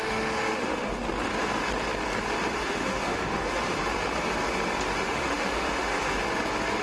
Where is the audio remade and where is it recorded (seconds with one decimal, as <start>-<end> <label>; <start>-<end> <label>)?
0.0-1.0 remade; 1.0-2.5 recorded; 2.5-3.8 remade; 3.8-5.0 recorded; 5.0-6.2 remade; 6.2-6.8 recorded